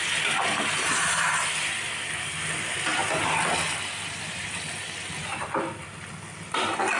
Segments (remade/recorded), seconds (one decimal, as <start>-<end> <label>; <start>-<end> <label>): 0.0-7.0 recorded